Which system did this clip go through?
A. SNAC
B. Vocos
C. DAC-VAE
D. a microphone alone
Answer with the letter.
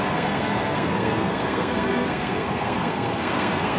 A